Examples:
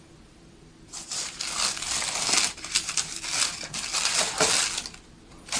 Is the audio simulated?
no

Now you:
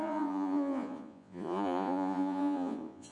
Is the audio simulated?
yes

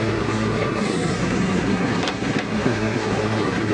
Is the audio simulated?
yes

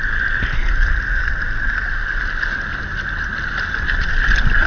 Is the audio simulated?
no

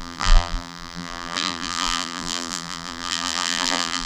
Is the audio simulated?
yes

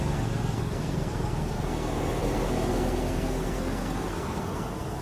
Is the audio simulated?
yes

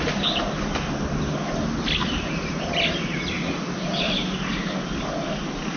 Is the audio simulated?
no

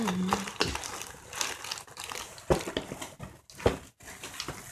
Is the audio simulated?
no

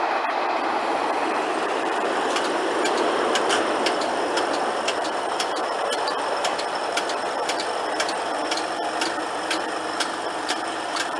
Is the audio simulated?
yes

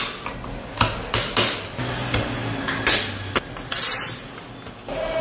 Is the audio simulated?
no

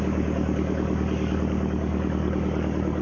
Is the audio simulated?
yes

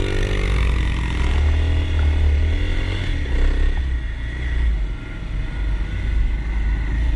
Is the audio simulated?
no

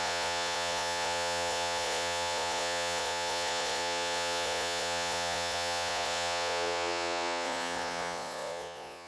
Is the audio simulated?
yes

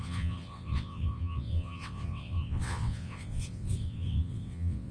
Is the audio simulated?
yes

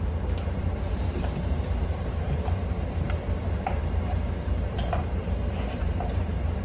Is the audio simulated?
yes